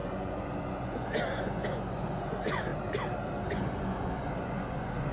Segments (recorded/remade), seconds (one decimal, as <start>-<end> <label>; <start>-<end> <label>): 0.0-2.7 remade; 2.7-3.5 recorded; 3.5-5.1 remade